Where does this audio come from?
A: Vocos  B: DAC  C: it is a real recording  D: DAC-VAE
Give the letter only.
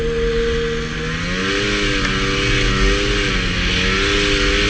C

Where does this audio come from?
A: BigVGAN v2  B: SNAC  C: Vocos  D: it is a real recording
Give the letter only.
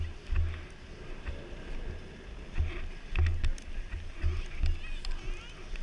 D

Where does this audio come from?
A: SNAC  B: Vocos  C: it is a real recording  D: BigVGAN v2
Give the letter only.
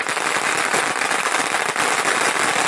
C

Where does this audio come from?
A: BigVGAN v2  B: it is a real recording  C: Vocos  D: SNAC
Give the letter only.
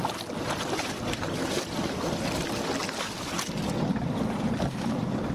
A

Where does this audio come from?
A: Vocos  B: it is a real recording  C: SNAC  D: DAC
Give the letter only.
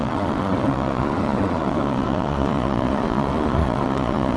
A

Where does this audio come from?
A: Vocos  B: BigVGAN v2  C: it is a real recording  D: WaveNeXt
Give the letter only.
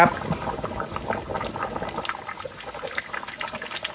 C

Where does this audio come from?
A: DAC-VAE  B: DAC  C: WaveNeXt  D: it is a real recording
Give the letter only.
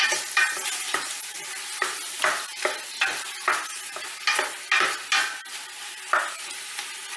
D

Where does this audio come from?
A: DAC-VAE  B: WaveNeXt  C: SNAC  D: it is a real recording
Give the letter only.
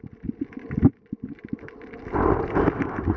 D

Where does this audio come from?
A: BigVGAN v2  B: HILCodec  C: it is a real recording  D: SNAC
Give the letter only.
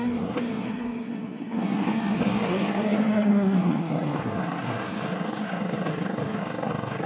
D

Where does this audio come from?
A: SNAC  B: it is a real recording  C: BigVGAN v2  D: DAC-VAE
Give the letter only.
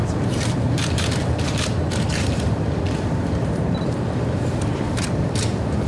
C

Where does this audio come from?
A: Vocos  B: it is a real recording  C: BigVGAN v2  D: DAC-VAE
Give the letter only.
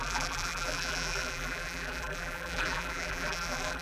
C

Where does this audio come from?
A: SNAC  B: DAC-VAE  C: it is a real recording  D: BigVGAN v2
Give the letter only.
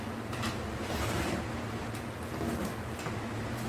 C